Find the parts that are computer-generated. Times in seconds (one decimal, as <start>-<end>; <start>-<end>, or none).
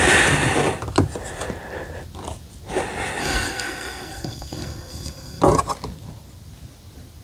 3.2-5.4